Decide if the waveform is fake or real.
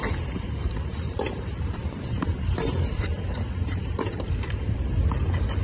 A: fake